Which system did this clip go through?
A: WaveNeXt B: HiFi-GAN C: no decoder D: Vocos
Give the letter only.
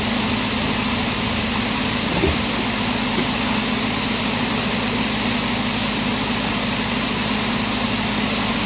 C